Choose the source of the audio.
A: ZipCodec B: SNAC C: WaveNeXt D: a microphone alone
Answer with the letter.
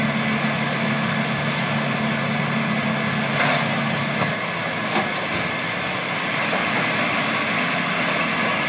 D